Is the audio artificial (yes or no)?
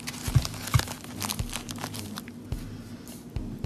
no